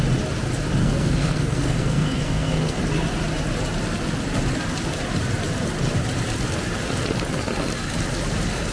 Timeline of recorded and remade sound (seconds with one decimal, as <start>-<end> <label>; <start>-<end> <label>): 0.0-0.8 recorded; 0.8-2.8 remade; 2.8-8.7 recorded